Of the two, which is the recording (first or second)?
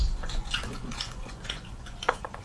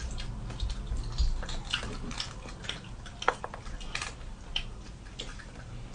second